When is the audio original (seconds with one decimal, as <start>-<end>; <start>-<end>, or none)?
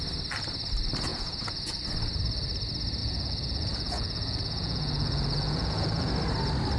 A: 0.0-1.1; 1.8-3.0; 6.1-6.8